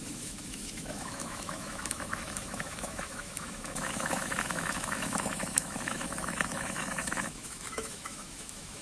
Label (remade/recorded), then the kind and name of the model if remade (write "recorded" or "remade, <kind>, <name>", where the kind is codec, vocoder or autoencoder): remade, autoencoder, DAC-VAE